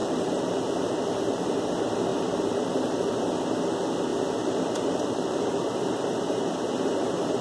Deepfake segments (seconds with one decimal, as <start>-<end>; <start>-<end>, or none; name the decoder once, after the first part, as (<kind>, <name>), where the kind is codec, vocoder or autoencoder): 0.0-1.5 (vocoder, BigVGAN v2); 2.1-3.2; 4.1-7.4